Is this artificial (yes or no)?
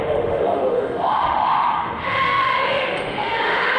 yes